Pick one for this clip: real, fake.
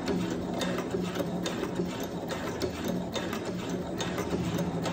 real